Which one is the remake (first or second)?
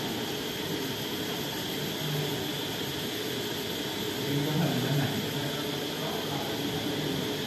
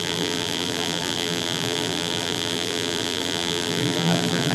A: second